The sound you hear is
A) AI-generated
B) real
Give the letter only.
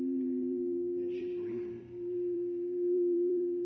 A